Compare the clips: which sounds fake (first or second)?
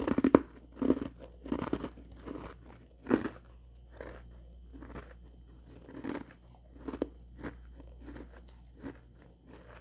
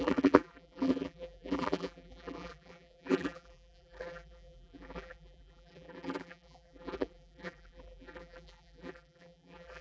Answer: second